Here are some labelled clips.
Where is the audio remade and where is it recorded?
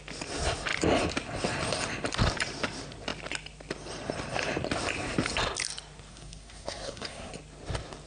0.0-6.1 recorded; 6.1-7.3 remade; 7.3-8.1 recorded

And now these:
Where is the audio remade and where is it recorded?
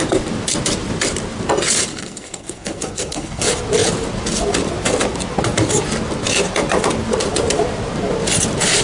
0.0-1.9 recorded; 1.9-3.4 remade; 3.4-8.8 recorded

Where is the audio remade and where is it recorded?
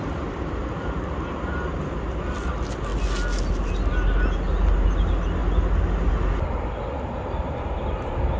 0.0-8.4 recorded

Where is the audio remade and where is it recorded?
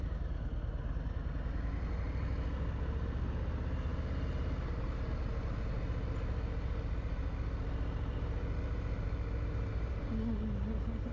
0.0-11.1 recorded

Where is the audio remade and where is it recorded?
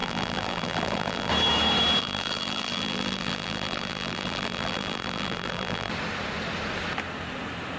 0.0-1.3 remade; 1.3-2.0 recorded; 2.0-5.9 remade; 5.9-7.8 recorded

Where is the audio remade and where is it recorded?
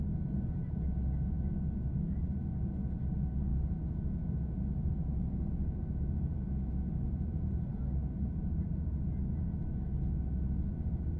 0.0-11.2 recorded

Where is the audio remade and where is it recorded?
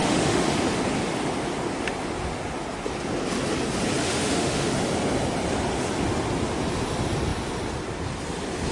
0.0-0.6 remade; 0.6-4.0 recorded; 4.0-4.7 remade; 4.7-8.7 recorded